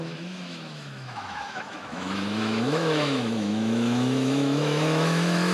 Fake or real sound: fake